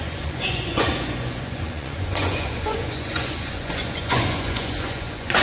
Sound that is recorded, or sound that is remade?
remade